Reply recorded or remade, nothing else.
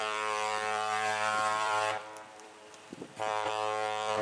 remade